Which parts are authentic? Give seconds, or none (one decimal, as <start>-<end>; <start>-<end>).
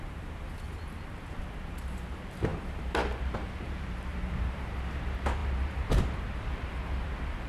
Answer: 0.7-1.4